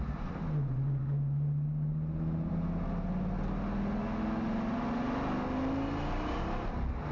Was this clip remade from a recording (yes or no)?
no